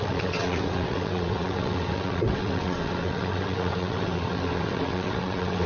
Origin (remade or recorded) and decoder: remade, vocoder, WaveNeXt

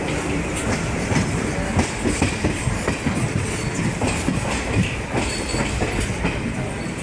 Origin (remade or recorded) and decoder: recorded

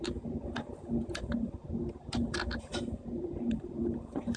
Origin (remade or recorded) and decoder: remade, vocoder, BigVGAN v2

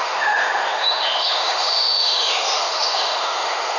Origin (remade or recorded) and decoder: remade, autoencoder, DAC-VAE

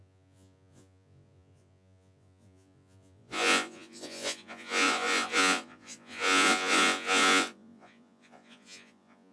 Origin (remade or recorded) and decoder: remade, vocoder, Vocos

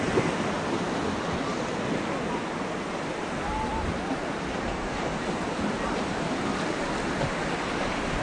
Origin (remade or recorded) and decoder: recorded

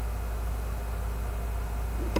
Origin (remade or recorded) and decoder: recorded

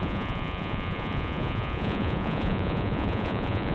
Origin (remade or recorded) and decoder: remade, vocoder, Vocos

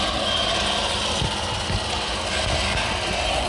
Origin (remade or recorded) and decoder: recorded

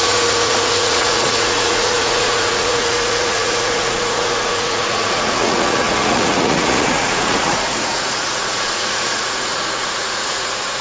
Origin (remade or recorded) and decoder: remade, vocoder, Vocos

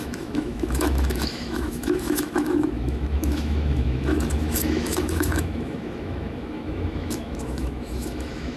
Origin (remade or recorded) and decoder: remade, autoencoder, DAC-VAE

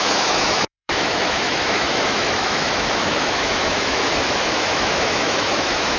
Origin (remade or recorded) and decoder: remade, autoencoder, DAC-VAE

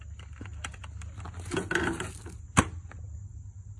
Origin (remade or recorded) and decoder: recorded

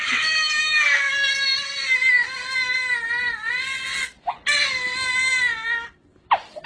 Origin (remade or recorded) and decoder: recorded